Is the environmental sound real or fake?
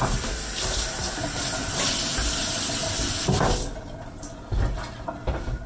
real